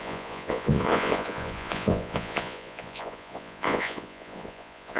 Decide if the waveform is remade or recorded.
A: remade